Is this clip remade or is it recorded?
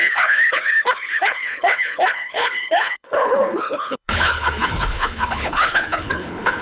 remade